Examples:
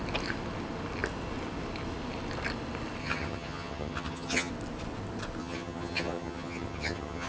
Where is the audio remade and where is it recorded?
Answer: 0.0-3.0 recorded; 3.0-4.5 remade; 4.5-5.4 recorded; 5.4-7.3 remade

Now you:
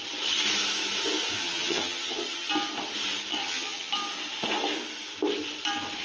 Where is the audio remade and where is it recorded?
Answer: 0.0-1.4 recorded; 1.4-2.5 remade; 2.5-3.4 recorded; 3.4-3.9 remade; 3.9-6.0 recorded

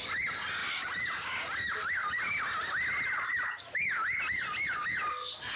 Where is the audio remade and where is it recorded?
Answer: 0.0-5.6 recorded

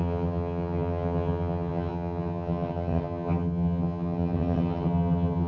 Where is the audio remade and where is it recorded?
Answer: 0.0-5.5 remade

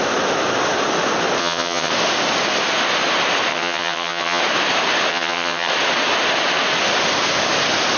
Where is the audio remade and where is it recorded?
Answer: 0.0-1.4 recorded; 1.4-1.9 remade; 1.9-3.5 recorded; 3.5-4.4 remade; 4.4-5.1 recorded; 5.1-5.7 remade; 5.7-8.0 recorded